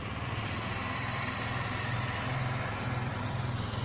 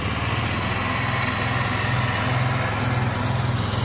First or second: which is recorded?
second